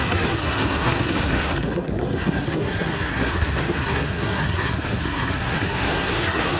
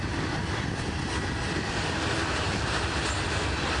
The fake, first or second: first